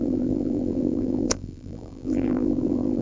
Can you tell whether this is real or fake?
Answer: fake